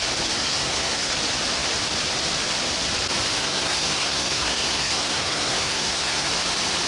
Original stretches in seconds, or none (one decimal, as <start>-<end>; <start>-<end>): 0.0-0.4; 1.1-3.4; 6.3-6.9